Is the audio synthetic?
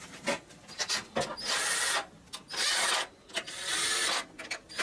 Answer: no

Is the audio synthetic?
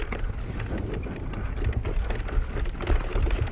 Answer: no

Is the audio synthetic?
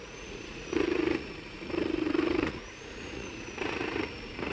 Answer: yes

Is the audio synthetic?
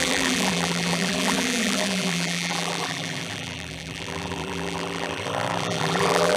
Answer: yes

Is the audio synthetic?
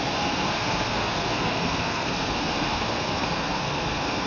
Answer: yes